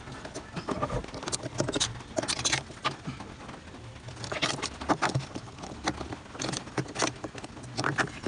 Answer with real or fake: real